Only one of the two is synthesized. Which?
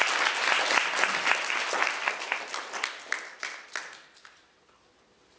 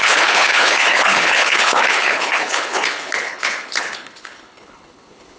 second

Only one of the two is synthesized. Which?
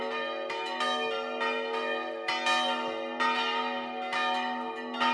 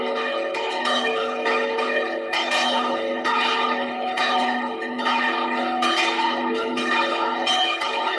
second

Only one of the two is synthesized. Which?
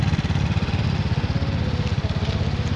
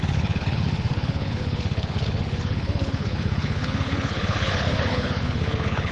second